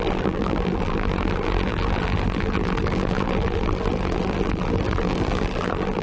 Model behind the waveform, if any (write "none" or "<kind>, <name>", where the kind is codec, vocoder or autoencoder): vocoder, BigVGAN v2